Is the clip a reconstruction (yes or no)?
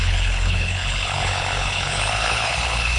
yes